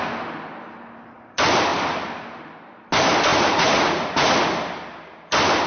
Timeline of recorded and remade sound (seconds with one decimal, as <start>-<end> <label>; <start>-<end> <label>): 0.0-3.3 recorded; 3.3-4.4 remade; 4.4-5.7 recorded